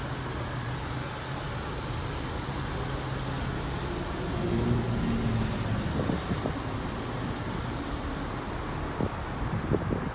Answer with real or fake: real